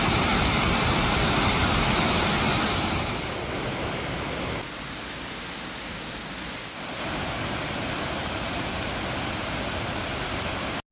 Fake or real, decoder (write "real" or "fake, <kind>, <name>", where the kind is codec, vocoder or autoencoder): real